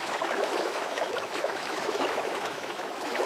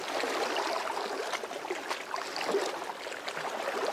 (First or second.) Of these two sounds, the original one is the second